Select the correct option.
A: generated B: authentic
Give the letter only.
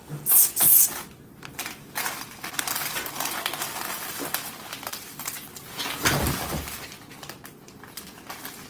B